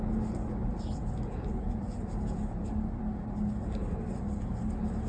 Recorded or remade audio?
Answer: recorded